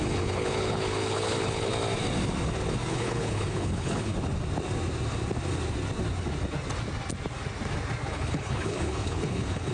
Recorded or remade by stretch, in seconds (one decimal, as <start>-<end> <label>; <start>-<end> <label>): 0.0-1.7 remade; 1.7-2.9 recorded; 2.9-4.1 remade; 4.1-8.1 recorded; 8.1-9.7 remade

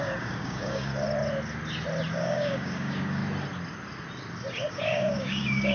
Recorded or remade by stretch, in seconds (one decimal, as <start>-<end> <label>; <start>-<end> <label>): 0.0-0.9 remade; 0.9-2.1 recorded; 2.1-3.2 remade; 3.2-4.7 recorded; 4.7-5.7 remade